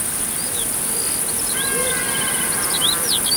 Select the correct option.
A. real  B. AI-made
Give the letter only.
A